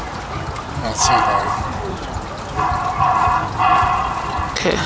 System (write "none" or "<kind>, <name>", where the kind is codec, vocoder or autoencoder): none